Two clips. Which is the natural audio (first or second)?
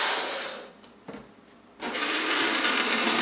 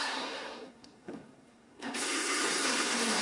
first